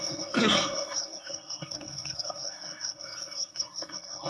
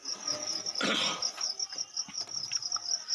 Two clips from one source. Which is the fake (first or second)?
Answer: first